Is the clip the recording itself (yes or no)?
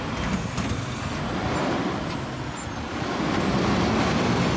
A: yes